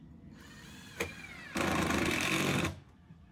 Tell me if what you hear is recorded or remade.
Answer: recorded